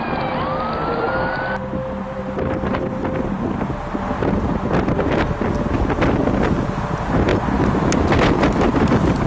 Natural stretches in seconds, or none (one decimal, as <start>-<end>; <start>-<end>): 0.0-9.3

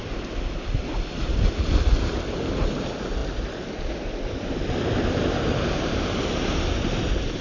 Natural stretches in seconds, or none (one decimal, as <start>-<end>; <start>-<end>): 0.0-7.4

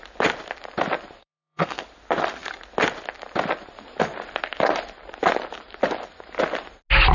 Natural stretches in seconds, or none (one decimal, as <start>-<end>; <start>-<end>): 0.0-1.2; 1.8-7.1

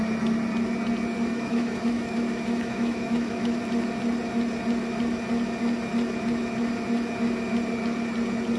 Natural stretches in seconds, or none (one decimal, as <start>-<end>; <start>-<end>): 0.0-1.3; 3.6-8.6

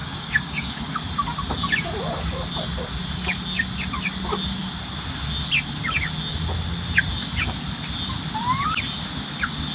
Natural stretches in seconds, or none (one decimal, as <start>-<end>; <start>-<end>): 0.7-9.7